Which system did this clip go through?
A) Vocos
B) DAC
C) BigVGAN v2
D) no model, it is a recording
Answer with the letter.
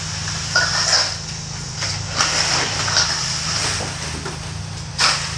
D